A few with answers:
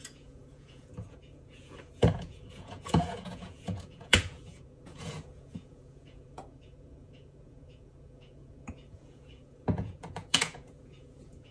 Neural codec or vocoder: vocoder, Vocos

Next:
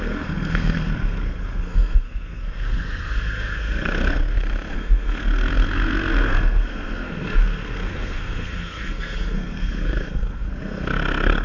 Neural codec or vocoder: codec, SNAC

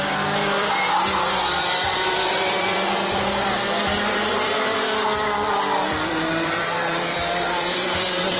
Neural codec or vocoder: vocoder, BigVGAN v2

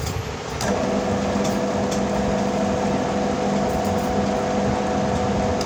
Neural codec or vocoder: none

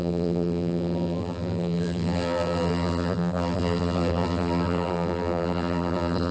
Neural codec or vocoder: vocoder, BigVGAN v2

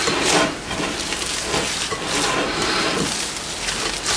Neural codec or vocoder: none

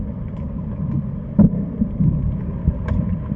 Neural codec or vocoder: none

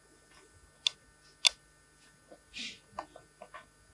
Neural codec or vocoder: none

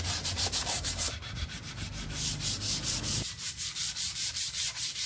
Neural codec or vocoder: vocoder, BigVGAN v2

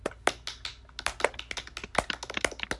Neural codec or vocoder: none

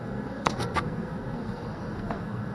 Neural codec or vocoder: codec, SNAC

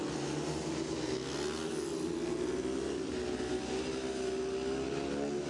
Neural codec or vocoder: none